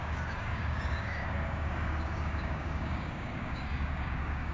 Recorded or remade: remade